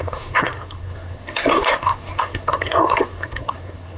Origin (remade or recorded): remade